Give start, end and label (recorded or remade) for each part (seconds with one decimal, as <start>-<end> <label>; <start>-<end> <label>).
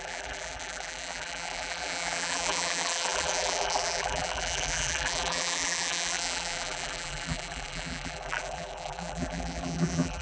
0.0-10.2 remade